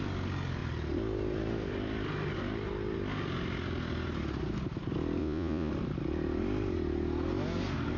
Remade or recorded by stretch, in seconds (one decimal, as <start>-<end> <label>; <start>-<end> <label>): 0.0-5.2 recorded; 5.2-5.7 remade; 5.7-8.0 recorded